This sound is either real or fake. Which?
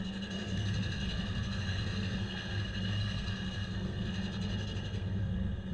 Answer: fake